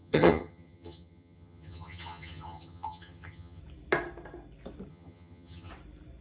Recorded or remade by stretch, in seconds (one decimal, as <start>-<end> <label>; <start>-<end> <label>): 0.0-3.6 remade; 3.6-4.9 recorded; 4.9-5.7 remade; 5.7-6.2 recorded

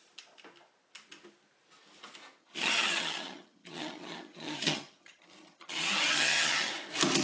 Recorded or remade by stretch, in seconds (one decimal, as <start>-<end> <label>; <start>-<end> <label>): 0.0-2.4 recorded; 2.4-6.7 remade; 6.7-7.2 recorded

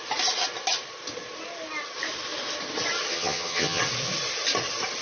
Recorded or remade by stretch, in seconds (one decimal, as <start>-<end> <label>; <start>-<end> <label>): 0.0-3.1 recorded; 3.1-3.8 remade; 3.8-5.0 recorded

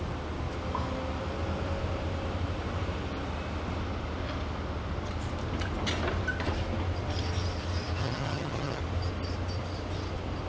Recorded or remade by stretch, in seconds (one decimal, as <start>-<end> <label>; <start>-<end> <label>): 0.0-8.0 recorded; 8.0-8.8 remade; 8.8-10.5 recorded

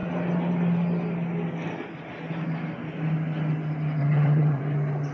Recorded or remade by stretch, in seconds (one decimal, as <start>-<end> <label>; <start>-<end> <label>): 0.0-4.0 recorded; 4.0-4.6 remade; 4.6-5.1 recorded

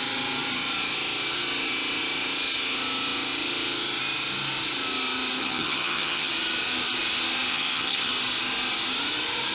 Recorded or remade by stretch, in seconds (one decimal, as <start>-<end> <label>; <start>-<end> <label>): 0.0-5.4 recorded; 5.4-6.3 remade; 6.3-7.5 recorded; 7.5-8.1 remade; 8.1-9.5 recorded

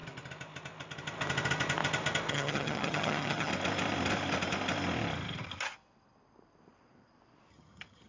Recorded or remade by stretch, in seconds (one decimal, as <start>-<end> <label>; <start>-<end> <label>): 0.0-2.3 recorded; 2.3-3.5 remade; 3.5-7.5 recorded; 7.5-8.1 remade

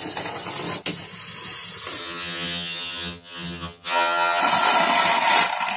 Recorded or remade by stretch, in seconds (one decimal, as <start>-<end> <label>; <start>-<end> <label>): 0.0-2.0 recorded; 2.0-4.4 remade; 4.4-5.8 recorded